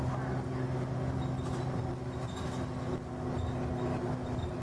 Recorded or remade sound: recorded